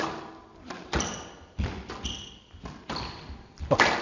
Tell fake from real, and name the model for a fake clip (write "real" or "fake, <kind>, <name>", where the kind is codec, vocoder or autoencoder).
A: real